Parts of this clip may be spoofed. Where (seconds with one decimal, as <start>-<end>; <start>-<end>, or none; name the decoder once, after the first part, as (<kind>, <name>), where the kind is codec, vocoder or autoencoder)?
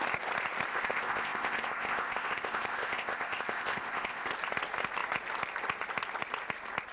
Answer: 0.7-4.3 (codec, ZipCodec)